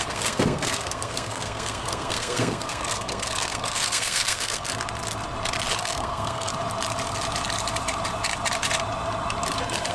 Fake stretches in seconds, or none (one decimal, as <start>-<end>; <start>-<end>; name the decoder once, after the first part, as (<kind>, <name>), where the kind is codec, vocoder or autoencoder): 0.0-4.7 (codec, SNAC); 5.8-6.5